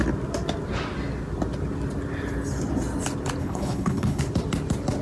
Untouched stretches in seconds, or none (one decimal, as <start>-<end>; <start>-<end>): 0.0-3.4; 4.2-5.0